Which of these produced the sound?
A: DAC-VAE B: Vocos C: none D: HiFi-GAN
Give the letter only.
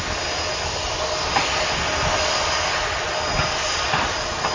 C